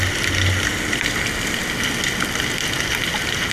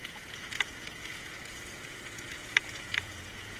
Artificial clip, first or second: second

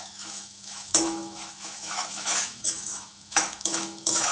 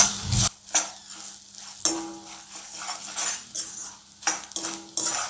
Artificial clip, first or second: first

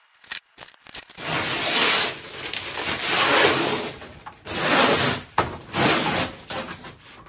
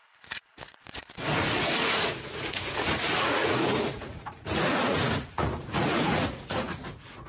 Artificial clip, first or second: second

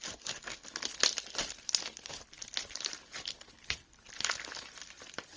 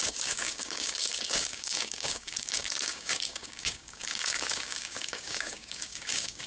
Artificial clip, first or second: second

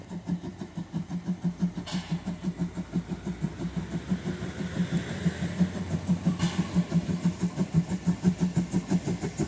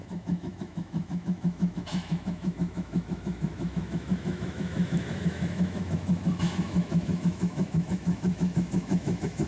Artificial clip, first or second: second